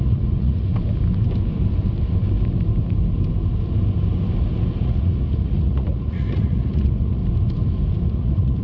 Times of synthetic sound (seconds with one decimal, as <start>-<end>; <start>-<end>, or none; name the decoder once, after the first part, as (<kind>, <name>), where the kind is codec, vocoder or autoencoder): 0.0-0.7 (vocoder, Vocos); 4.8-7.2; 8.1-8.6